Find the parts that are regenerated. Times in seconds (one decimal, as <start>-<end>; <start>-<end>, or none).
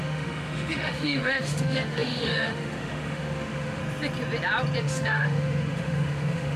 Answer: 0.0-3.8; 4.8-6.6